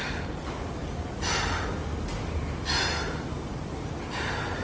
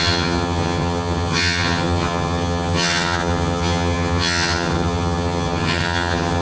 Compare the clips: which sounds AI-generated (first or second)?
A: second